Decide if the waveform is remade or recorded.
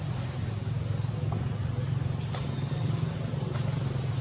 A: recorded